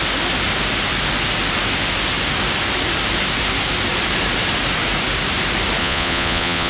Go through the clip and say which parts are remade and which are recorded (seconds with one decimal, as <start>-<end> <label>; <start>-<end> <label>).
0.0-5.8 recorded; 5.8-6.7 remade

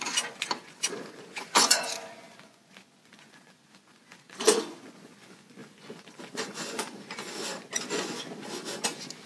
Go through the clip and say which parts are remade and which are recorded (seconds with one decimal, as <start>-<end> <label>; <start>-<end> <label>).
0.0-9.3 remade

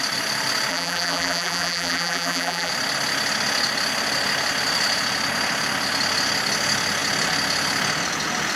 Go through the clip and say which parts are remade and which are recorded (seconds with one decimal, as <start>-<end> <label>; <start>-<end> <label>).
0.0-0.7 recorded; 0.7-2.7 remade; 2.7-8.6 recorded

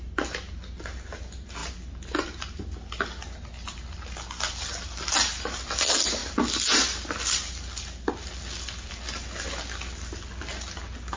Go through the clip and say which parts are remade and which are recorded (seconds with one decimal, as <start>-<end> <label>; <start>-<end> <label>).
0.0-11.2 recorded

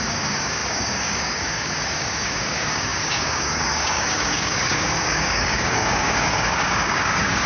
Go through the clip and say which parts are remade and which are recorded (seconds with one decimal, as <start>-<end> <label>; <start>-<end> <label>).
0.0-7.5 remade